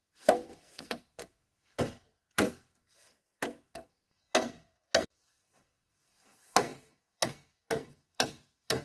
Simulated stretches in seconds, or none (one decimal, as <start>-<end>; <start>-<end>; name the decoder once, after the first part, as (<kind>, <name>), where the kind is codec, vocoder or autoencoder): 0.0-8.8 (codec, SNAC)